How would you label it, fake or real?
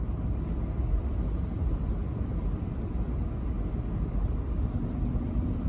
real